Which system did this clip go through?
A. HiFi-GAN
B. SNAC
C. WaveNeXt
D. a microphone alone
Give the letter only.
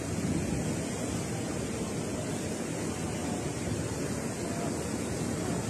D